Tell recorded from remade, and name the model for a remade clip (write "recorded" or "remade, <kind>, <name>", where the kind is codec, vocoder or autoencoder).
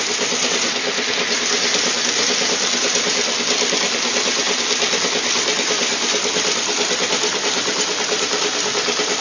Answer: recorded